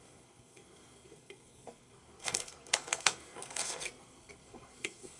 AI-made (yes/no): yes